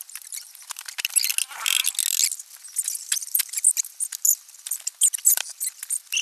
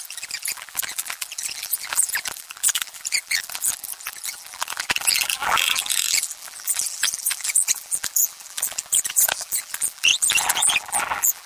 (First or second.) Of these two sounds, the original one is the first